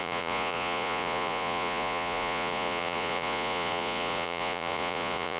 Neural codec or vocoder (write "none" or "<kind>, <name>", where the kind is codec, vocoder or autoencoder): vocoder, Vocos